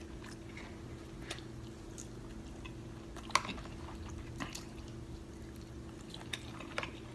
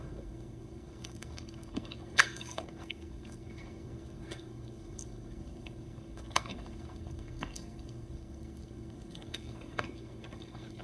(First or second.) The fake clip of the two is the second